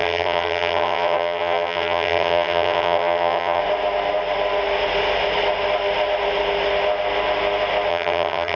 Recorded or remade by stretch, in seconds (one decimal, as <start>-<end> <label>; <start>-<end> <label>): 0.0-3.6 remade; 3.6-7.9 recorded; 7.9-8.5 remade